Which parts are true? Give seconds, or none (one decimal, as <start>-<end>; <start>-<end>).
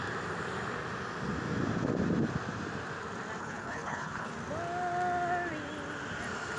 0.0-3.4; 4.3-6.6